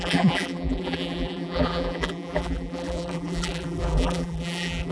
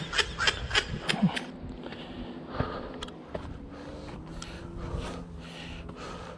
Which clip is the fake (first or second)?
first